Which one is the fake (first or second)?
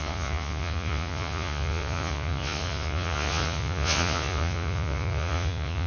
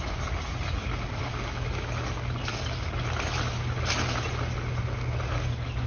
first